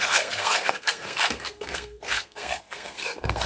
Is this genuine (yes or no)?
no